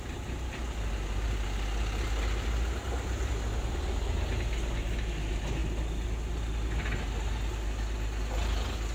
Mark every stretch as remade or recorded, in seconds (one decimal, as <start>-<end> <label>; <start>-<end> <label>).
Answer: 0.0-8.9 recorded